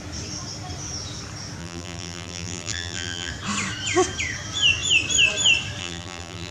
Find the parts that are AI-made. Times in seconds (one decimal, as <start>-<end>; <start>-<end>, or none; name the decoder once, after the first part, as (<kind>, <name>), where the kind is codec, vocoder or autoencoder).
1.6-3.3 (vocoder, BigVGAN v2); 5.8-6.5